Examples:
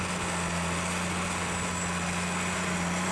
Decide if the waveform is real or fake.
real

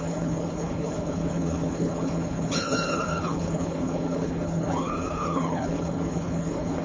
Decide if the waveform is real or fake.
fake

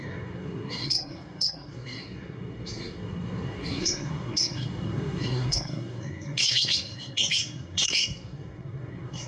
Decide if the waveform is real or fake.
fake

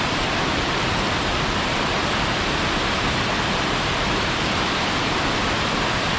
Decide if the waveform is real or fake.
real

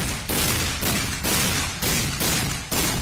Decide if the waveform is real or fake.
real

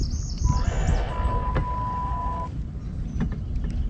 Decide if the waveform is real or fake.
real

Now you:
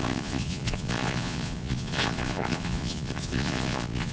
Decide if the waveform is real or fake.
fake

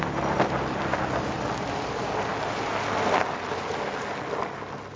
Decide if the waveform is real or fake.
real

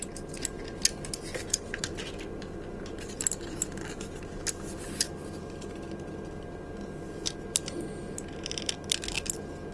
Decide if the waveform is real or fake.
real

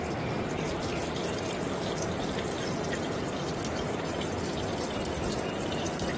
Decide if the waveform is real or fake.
fake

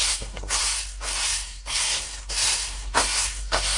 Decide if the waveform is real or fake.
fake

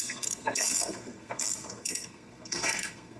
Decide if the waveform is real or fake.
fake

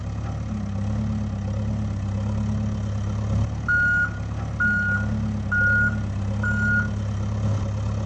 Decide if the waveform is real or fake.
real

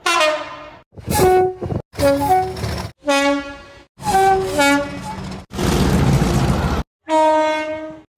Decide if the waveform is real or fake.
real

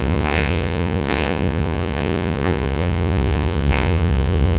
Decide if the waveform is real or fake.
fake